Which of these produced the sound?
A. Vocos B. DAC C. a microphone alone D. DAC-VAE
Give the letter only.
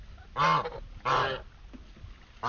C